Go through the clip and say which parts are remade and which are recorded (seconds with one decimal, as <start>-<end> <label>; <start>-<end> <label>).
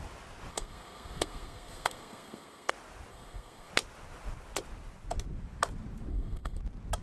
0.0-0.5 recorded; 0.5-2.7 remade; 2.7-3.1 recorded; 3.1-3.7 remade; 3.7-6.1 recorded; 6.1-6.6 remade; 6.6-7.0 recorded